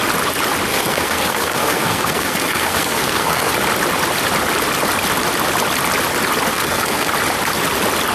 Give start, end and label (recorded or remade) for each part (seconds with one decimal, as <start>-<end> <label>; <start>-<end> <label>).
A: 0.0-0.7 recorded; 0.7-3.5 remade; 3.5-6.5 recorded; 6.5-7.1 remade; 7.1-8.1 recorded